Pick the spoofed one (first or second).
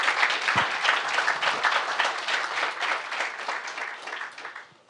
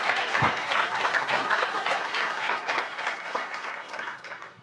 second